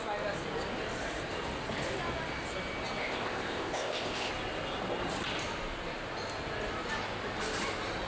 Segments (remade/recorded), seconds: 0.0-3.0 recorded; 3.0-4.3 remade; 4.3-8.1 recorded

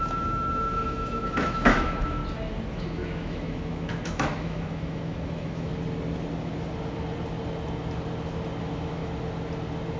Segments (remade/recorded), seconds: 0.0-2.2 remade; 2.2-2.7 recorded; 2.7-5.7 remade; 5.7-8.6 recorded; 8.6-9.0 remade; 9.0-10.0 recorded

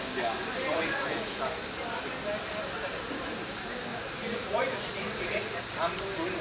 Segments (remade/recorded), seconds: 0.0-0.7 recorded; 0.7-1.4 remade; 1.4-3.9 recorded; 3.9-5.6 remade; 5.6-6.4 recorded